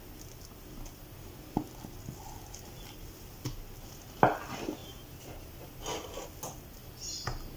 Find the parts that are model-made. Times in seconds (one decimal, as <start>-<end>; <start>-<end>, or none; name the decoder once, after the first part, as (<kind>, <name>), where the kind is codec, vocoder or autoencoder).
none